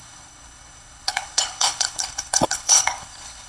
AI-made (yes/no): yes